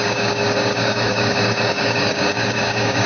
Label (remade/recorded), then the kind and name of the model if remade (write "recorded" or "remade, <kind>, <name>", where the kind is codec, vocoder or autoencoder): remade, codec, DAC